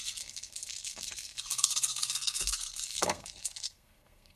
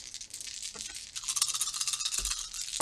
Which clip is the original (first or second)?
second